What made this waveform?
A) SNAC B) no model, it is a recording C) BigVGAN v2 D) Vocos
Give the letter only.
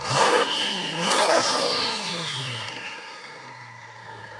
A